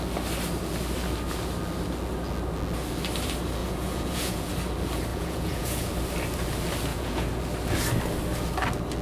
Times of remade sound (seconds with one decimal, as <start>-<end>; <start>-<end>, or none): 3.6-4.5; 5.1-5.9; 6.9-7.4